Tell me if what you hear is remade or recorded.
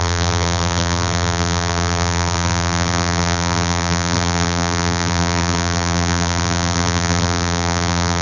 remade